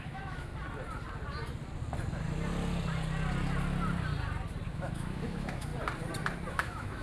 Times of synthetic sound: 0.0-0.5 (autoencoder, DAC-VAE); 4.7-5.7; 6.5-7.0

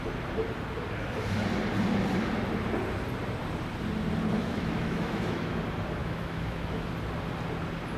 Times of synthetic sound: 4.4-5.6 (autoencoder, DAC-VAE); 6.0-6.9